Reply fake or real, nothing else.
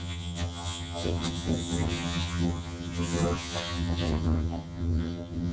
fake